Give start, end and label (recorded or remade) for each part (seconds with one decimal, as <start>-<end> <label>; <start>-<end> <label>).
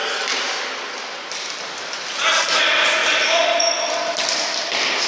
0.0-5.1 recorded